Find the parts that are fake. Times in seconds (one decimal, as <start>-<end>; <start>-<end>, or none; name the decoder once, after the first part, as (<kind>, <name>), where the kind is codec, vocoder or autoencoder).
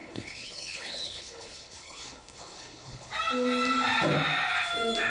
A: 0.0-3.1 (codec, HILCodec)